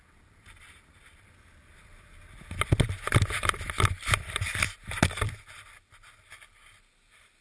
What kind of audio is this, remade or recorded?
recorded